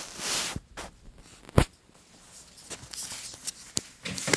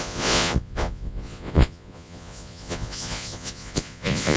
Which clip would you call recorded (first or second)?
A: first